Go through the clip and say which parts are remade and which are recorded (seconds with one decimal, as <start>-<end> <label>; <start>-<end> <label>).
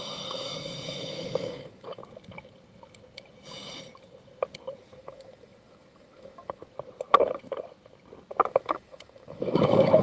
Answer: 0.0-2.0 remade; 2.0-4.8 recorded; 4.8-6.6 remade; 6.6-8.5 recorded; 8.5-10.0 remade